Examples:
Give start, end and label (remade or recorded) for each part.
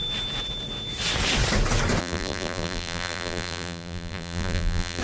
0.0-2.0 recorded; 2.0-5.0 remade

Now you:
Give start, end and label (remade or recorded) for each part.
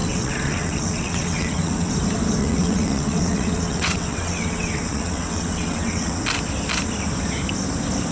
0.0-1.9 remade; 1.9-2.4 recorded; 2.4-6.2 remade; 6.2-8.1 recorded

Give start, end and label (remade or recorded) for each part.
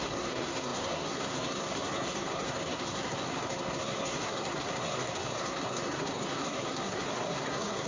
0.0-7.9 remade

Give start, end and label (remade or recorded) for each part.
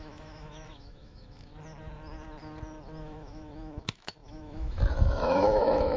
0.0-1.5 remade; 1.5-3.0 recorded; 3.0-6.0 remade